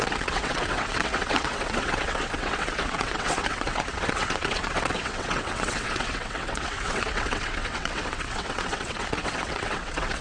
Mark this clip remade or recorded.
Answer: remade